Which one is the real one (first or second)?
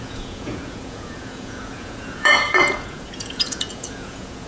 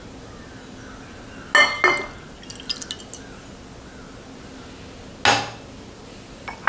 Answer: second